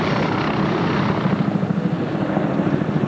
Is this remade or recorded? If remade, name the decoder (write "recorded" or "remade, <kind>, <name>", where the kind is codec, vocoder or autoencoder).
recorded